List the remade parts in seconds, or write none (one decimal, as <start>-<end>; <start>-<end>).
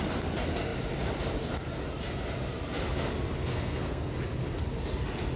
3.5-4.1